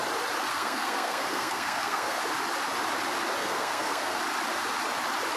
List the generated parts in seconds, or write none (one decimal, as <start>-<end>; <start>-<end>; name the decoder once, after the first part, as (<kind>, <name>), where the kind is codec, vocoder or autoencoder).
0.5-2.2 (codec, SNAC); 3.4-4.2